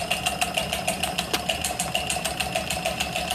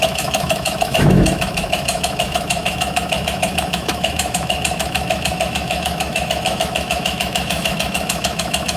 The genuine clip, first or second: first